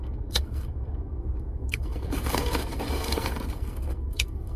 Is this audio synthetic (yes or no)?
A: yes